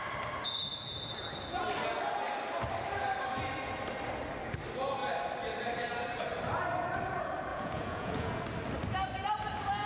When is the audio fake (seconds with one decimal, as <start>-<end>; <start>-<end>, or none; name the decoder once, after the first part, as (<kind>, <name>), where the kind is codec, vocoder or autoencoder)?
7.5-8.4 (vocoder, Vocos)

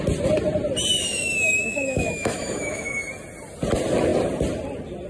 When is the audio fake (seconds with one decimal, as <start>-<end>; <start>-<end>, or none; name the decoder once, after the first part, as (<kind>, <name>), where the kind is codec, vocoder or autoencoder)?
0.9-3.0 (autoencoder, DAC-VAE)